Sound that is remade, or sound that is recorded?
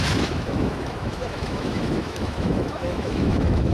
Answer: remade